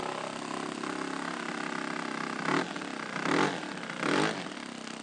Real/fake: real